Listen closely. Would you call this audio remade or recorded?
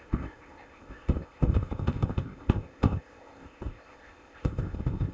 remade